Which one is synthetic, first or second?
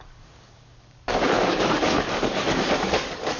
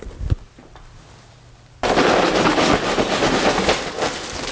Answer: first